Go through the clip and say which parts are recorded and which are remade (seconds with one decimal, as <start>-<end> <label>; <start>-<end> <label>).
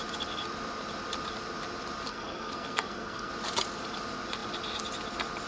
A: 0.0-2.1 recorded; 2.1-3.3 remade; 3.3-5.5 recorded